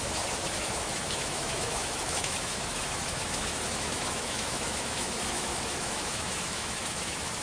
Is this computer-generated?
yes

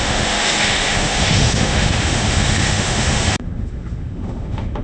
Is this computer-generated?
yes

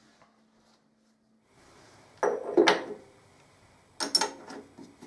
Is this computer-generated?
no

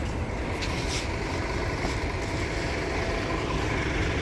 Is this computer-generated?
no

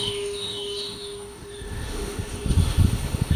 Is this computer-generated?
yes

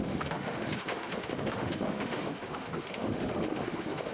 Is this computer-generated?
yes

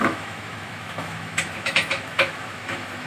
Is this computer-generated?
yes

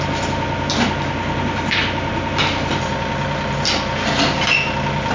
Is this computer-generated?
no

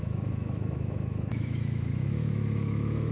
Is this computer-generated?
yes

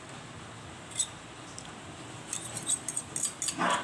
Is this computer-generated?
no